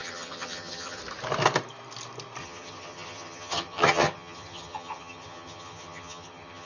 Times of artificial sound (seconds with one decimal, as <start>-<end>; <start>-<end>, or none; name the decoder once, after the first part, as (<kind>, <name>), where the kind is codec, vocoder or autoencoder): 0.0-1.0 (vocoder, HiFi-GAN); 2.4-6.7